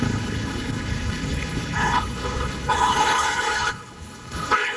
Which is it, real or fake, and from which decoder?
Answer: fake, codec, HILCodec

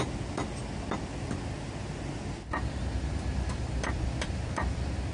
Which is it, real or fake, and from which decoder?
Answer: real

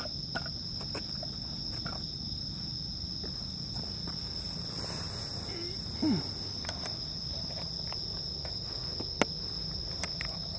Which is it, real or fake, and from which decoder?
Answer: real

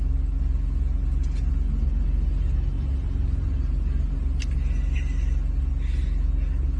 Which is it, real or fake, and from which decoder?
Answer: real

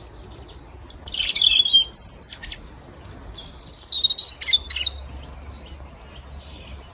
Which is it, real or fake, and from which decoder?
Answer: real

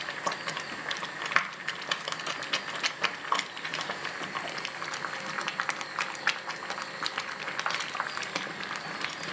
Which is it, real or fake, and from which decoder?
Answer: real